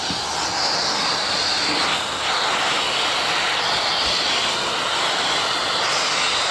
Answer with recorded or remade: recorded